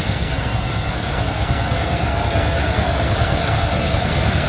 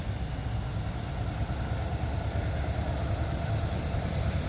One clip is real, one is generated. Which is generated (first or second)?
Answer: first